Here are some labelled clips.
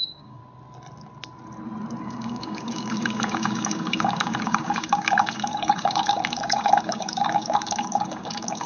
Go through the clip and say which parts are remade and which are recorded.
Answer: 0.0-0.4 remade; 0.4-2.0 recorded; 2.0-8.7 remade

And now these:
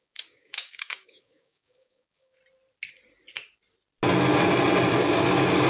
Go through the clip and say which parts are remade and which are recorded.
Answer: 0.0-2.4 remade; 2.4-5.0 recorded; 5.0-5.7 remade

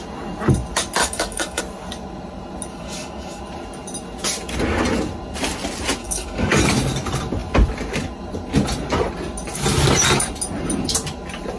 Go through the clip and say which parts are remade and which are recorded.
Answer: 0.0-1.0 recorded; 1.0-1.6 remade; 1.6-2.7 recorded; 2.7-3.4 remade; 3.4-6.0 recorded; 6.0-6.6 remade; 6.6-11.6 recorded

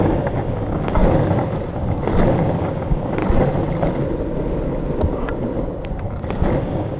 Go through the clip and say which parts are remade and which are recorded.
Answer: 0.0-1.0 remade; 1.0-2.6 recorded; 2.6-3.2 remade; 3.2-6.6 recorded; 6.6-7.0 remade

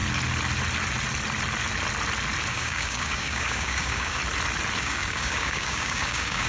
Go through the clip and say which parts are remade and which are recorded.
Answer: 0.0-2.5 recorded; 2.5-4.2 remade; 4.2-4.8 recorded; 4.8-6.5 remade

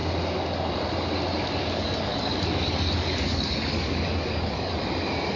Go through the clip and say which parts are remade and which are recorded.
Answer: 0.0-1.6 recorded; 1.6-4.8 remade; 4.8-5.4 recorded

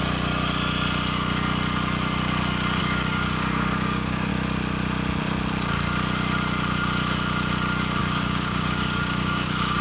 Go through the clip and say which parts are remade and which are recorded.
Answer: 0.0-2.8 recorded; 2.8-4.3 remade; 4.3-8.0 recorded; 8.0-9.8 remade